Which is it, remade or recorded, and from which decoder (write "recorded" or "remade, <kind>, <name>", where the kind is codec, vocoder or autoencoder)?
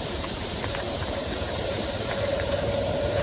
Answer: remade, vocoder, BigVGAN v2